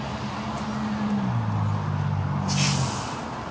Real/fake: real